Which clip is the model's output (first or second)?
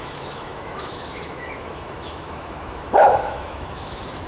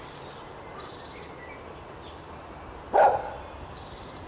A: first